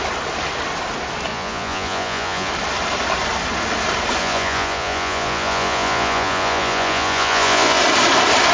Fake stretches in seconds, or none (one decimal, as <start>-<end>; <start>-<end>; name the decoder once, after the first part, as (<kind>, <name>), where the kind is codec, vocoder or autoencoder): 1.3-2.5 (vocoder, Vocos); 4.2-7.8